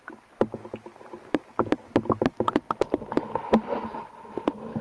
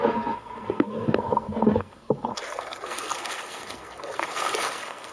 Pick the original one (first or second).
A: first